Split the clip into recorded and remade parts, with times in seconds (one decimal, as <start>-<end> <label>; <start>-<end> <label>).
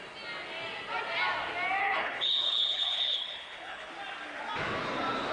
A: 0.0-1.8 recorded; 1.8-3.9 remade; 3.9-5.3 recorded